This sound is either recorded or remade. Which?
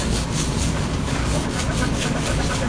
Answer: remade